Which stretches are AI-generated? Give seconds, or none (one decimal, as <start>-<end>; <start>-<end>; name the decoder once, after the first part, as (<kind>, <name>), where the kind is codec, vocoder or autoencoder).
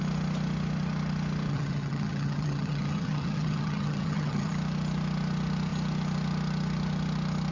1.5-4.5 (vocoder, HiFi-GAN)